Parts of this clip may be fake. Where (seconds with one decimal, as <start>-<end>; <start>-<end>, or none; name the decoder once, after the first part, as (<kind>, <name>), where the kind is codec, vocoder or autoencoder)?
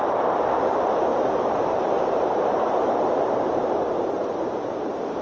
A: 0.0-5.2 (vocoder, BigVGAN v2)